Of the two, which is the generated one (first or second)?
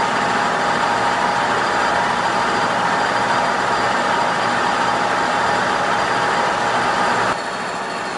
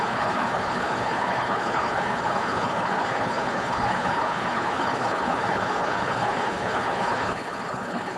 second